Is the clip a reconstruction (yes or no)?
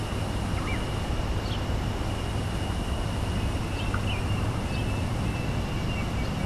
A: no